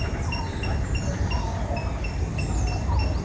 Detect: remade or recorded recorded